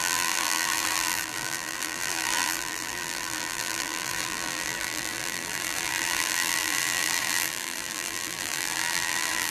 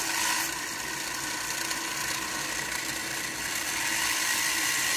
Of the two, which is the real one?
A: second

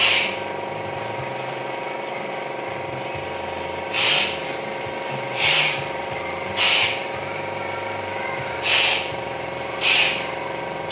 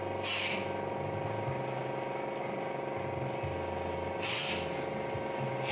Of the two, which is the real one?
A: second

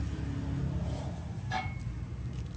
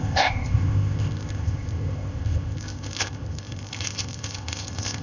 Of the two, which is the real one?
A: first